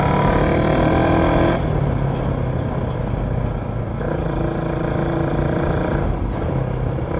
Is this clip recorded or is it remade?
recorded